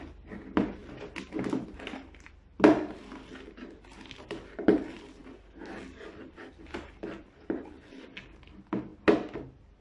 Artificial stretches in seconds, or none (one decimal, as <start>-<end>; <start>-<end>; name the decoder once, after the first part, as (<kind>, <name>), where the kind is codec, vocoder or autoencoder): none